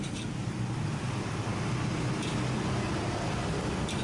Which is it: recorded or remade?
recorded